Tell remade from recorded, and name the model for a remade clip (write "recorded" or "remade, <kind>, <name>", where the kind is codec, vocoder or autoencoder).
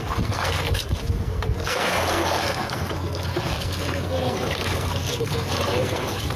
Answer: remade, codec, SNAC